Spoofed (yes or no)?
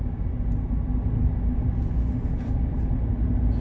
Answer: no